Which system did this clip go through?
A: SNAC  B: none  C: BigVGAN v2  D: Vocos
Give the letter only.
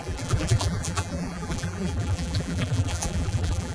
C